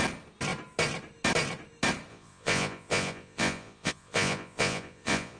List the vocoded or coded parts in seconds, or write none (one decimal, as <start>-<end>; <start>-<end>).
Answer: 2.1-5.4